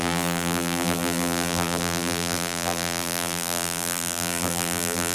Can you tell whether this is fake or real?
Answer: fake